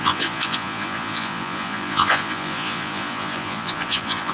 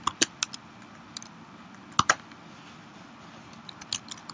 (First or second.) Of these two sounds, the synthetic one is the first